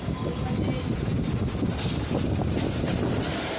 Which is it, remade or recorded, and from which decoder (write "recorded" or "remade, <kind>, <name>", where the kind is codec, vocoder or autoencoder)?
recorded